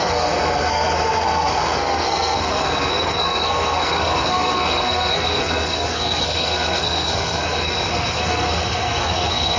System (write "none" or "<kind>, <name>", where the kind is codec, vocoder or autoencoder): codec, SNAC